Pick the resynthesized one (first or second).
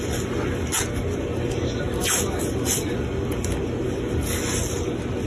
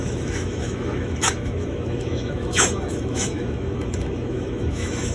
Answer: second